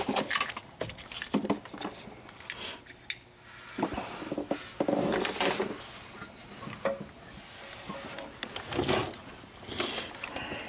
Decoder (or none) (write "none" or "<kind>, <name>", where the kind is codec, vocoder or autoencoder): none